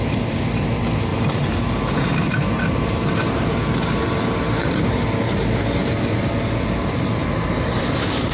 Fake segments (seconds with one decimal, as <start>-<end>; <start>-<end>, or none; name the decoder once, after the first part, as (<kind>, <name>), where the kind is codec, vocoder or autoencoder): 1.1-5.1 (vocoder, BigVGAN v2); 7.2-7.8